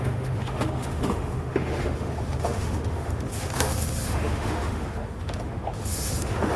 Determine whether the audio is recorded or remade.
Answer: remade